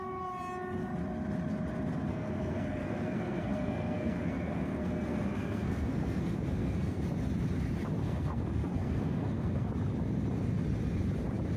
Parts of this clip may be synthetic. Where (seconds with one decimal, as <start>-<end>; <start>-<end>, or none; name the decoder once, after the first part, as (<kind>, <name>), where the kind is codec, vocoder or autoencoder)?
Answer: 2.1-7.0 (codec, SNAC); 8.0-9.7